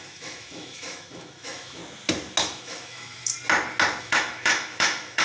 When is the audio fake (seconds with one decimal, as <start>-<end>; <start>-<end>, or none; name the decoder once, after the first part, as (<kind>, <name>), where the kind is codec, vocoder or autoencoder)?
0.0-1.8 (autoencoder, DAC-VAE); 2.4-3.3; 4.0-5.2